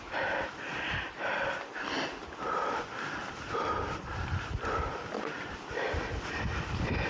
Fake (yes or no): no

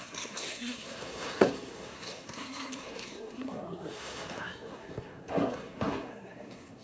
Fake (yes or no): yes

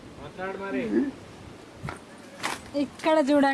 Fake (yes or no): no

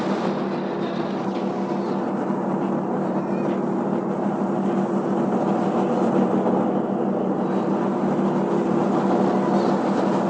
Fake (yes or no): no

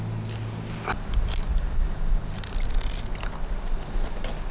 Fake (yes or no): no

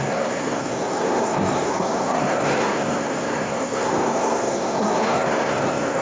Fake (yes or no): yes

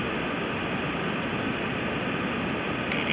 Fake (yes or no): no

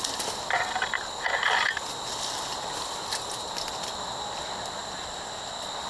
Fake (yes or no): no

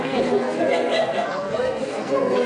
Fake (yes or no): yes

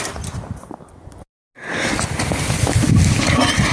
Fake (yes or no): no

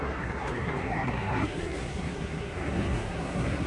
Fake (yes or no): yes